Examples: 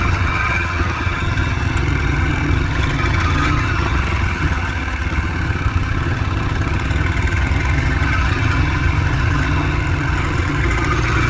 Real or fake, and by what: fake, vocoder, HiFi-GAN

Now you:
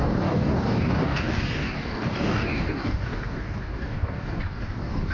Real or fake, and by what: fake, codec, DAC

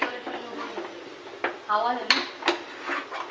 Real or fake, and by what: real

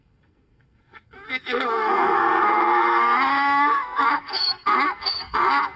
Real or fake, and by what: fake, codec, SNAC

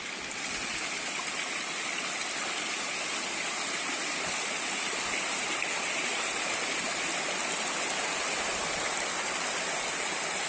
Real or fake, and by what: real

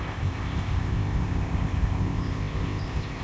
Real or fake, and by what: fake, codec, ZipCodec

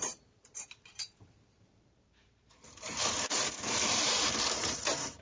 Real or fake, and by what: fake, vocoder, BigVGAN v2